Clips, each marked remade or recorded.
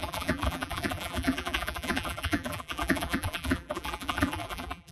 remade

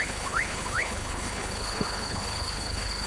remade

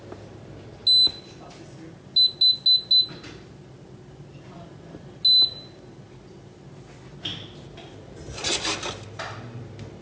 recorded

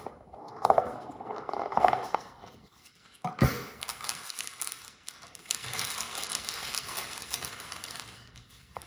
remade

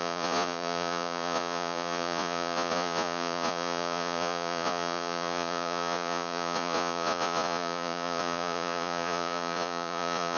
remade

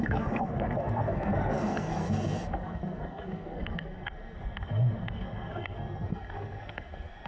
remade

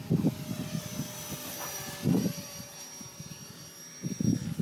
recorded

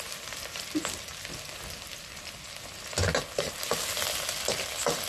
recorded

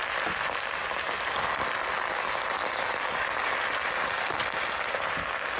recorded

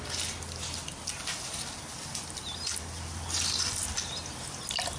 recorded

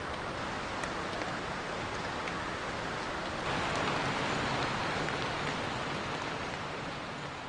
recorded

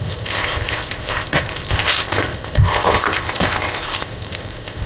remade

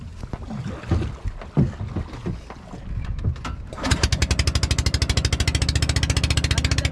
recorded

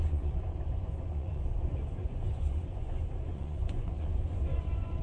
remade